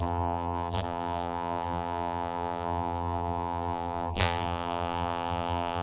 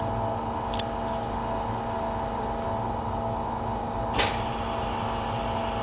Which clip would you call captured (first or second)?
second